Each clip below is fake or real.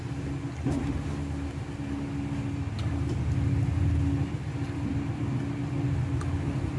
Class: real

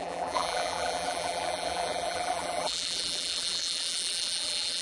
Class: fake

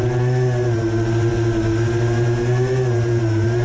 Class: real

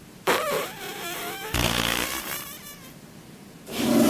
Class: fake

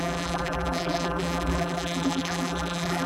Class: fake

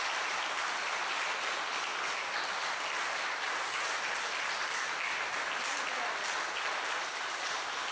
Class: real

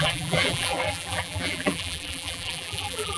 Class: fake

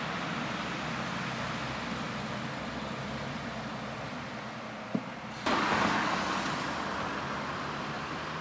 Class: fake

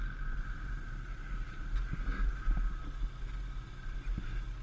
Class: real